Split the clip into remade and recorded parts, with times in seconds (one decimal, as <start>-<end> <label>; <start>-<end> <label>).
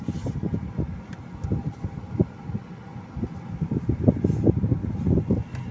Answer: 0.0-5.7 recorded